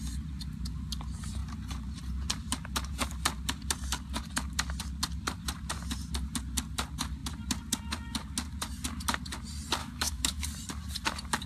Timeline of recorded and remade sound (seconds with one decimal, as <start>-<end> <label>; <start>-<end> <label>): 0.0-9.8 recorded; 9.8-10.4 remade; 10.4-11.5 recorded